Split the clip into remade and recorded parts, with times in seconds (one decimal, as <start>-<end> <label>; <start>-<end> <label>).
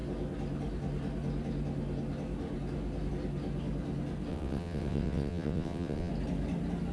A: 0.0-4.3 recorded; 4.3-6.1 remade; 6.1-6.9 recorded